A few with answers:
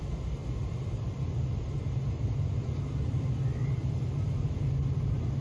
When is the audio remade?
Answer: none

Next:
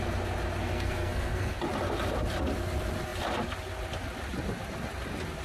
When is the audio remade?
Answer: 0.6-1.6 (codec, SNAC)

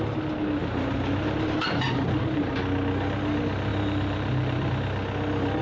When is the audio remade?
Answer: 0.6-2.5 (vocoder, BigVGAN v2); 3.7-4.7

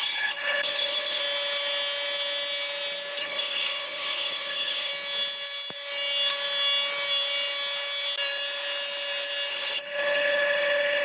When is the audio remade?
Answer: 0.0-1.2 (codec, HILCodec); 3.2-4.9; 9.5-11.0

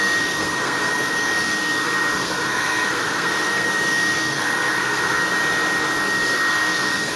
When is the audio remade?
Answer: 0.0-5.3 (codec, SNAC); 5.8-7.2

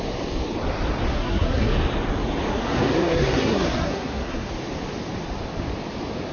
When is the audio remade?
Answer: 1.1-1.7 (codec, SNAC); 2.5-4.5